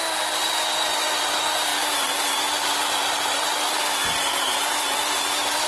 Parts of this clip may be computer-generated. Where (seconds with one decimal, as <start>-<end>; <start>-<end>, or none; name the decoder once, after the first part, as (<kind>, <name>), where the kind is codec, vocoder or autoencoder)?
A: none